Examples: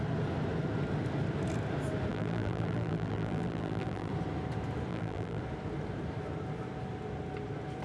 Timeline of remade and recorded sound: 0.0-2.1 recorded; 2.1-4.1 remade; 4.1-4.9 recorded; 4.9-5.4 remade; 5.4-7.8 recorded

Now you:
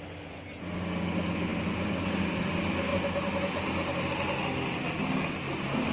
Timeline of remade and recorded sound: 0.0-5.9 recorded